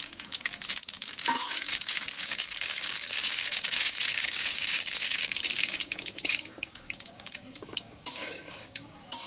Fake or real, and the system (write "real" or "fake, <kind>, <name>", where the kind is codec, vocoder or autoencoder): fake, codec, DAC